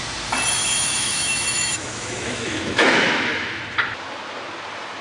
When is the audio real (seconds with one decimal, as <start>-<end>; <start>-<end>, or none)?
0.0-0.6; 3.6-5.0